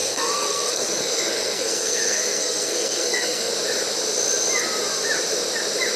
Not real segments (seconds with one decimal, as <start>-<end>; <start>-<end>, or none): 0.0-3.5